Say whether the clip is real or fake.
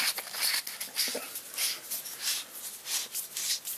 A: real